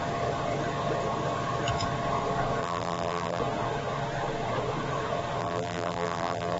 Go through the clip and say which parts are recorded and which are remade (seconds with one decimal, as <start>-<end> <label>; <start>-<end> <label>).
0.0-2.6 recorded; 2.6-3.4 remade; 3.4-5.4 recorded; 5.4-6.6 remade